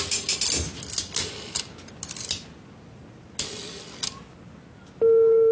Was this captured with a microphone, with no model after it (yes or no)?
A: yes